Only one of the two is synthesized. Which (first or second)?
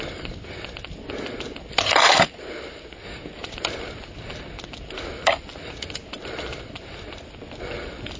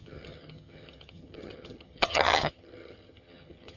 second